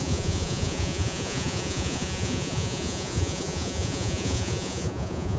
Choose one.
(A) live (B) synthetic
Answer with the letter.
B